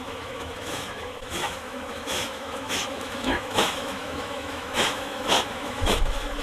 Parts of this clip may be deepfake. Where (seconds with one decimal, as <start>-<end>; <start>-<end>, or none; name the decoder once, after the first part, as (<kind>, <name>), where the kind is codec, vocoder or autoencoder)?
0.0-6.4 (autoencoder, DAC-VAE)